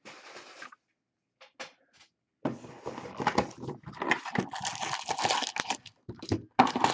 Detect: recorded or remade recorded